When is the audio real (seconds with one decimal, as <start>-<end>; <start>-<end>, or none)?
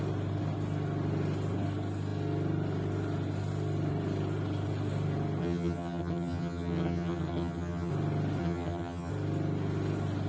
0.0-5.4; 7.9-8.4; 9.1-10.3